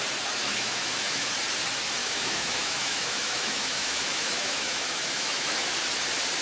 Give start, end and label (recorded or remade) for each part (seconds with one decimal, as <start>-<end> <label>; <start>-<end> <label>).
0.0-0.4 recorded; 0.4-1.3 remade; 1.3-2.0 recorded; 2.0-5.7 remade; 5.7-6.4 recorded